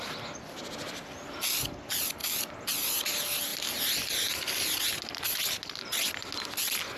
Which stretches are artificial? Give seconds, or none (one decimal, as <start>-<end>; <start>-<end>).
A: none